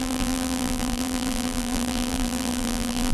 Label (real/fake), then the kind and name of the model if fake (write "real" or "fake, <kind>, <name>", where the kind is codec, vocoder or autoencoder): fake, vocoder, BigVGAN v2